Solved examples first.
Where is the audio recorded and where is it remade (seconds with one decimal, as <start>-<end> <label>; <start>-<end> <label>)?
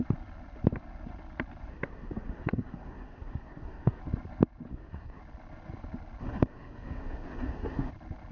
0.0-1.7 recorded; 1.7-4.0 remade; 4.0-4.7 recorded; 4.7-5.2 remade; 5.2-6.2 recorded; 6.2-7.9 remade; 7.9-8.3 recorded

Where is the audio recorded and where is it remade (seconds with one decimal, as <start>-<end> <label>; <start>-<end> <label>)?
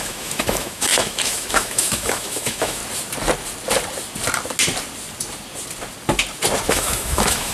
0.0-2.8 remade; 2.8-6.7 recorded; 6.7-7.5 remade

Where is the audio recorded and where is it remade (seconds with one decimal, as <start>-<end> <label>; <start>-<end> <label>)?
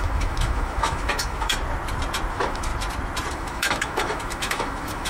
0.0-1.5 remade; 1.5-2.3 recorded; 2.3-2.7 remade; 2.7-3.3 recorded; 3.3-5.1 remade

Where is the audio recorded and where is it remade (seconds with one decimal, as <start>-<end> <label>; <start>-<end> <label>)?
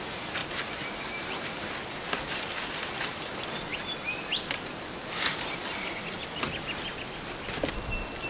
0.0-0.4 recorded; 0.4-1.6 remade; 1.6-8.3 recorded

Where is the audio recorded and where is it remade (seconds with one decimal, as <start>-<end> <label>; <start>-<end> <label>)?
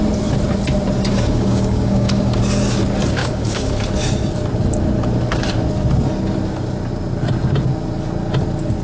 0.0-1.1 recorded; 1.1-2.4 remade; 2.4-3.2 recorded; 3.2-3.7 remade; 3.7-8.8 recorded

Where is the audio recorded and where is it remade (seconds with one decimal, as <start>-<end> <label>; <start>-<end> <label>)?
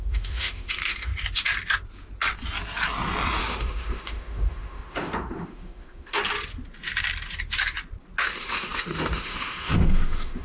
0.0-1.1 remade; 1.1-3.4 recorded; 3.4-6.2 remade; 6.2-8.2 recorded; 8.2-10.4 remade